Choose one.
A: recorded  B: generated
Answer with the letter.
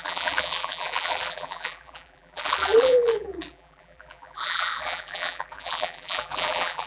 B